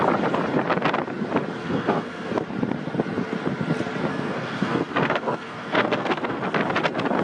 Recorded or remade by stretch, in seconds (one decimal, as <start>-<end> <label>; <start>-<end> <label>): 0.0-1.6 recorded; 1.6-2.3 remade; 2.3-4.1 recorded; 4.1-6.4 remade; 6.4-7.2 recorded